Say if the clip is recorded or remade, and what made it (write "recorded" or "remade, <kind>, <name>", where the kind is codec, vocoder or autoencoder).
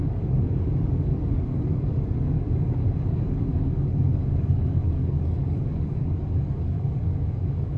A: remade, codec, DAC